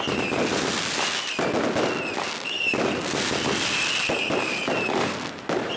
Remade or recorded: recorded